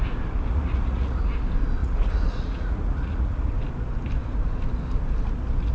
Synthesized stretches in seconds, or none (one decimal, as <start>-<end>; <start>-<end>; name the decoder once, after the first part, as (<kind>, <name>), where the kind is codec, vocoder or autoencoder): 0.5-1.2 (vocoder, Vocos); 1.8-3.6